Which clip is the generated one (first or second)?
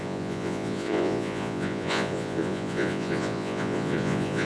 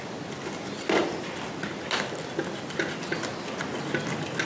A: first